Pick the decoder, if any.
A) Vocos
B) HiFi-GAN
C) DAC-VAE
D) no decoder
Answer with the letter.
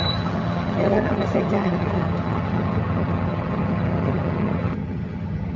B